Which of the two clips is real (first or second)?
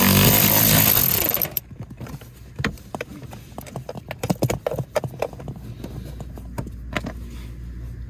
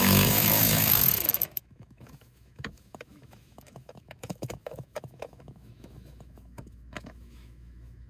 first